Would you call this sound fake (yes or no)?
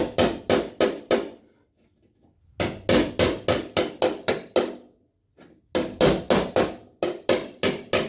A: no